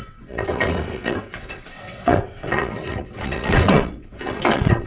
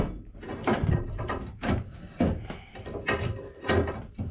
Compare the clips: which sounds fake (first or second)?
first